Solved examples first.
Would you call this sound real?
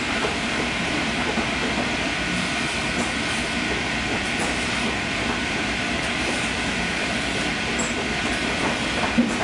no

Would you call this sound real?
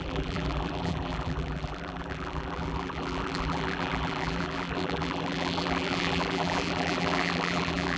no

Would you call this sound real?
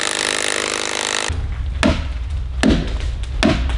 yes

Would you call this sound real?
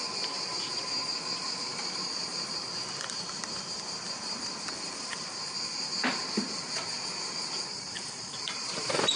no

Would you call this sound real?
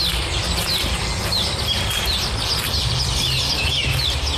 yes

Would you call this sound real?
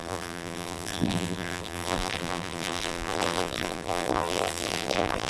no